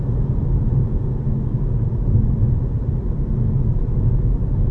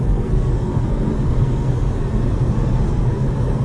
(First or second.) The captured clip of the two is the first